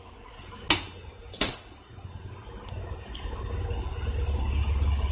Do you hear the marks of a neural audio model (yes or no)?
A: no